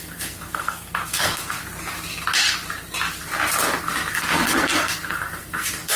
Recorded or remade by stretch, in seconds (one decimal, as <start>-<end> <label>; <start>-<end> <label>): 0.0-1.6 remade; 1.6-3.8 recorded; 3.8-6.0 remade